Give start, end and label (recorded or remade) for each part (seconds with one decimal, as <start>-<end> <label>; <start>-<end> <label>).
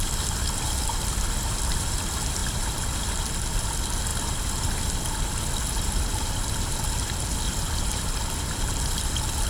0.0-2.4 recorded; 2.4-3.1 remade; 3.1-9.5 recorded